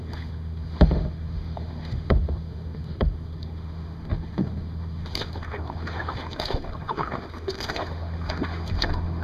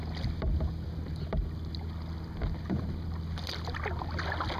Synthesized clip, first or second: first